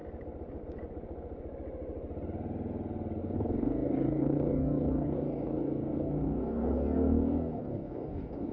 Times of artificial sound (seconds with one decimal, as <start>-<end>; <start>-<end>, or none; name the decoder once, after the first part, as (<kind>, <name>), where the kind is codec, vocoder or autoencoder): 3.2-8.5 (codec, DAC)